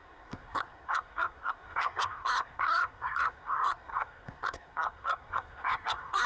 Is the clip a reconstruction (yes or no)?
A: yes